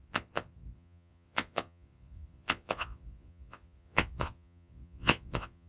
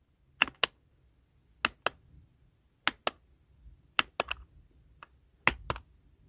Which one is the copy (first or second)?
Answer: first